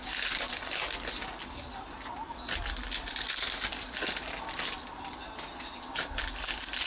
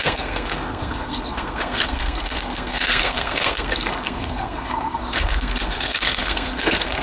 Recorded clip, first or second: first